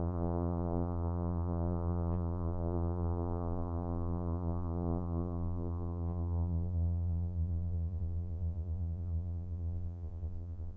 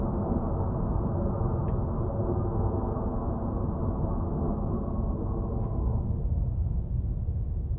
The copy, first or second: first